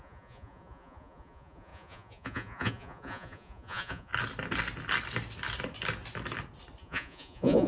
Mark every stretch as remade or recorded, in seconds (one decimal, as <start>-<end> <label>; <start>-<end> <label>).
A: 0.0-4.1 remade; 4.1-6.8 recorded; 6.8-7.7 remade

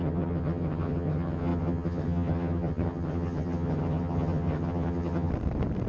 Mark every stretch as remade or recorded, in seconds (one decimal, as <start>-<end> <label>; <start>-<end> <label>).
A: 0.0-5.3 remade; 5.3-5.9 recorded

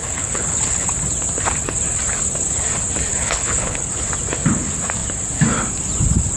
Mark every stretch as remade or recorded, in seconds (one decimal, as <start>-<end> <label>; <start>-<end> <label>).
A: 0.0-0.9 remade; 0.9-3.1 recorded; 3.1-3.9 remade; 3.9-6.4 recorded

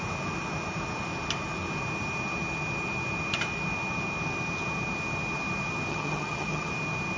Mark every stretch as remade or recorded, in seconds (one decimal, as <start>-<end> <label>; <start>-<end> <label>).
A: 0.0-5.9 recorded; 5.9-6.7 remade; 6.7-7.2 recorded